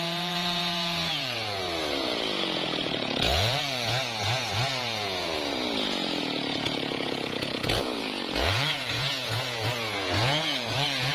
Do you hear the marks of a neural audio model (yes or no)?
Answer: yes